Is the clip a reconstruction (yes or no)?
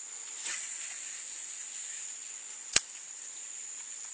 no